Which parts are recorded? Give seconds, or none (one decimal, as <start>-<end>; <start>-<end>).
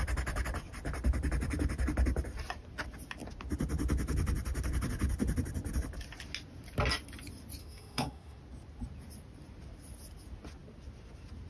0.0-7.6; 8.4-11.5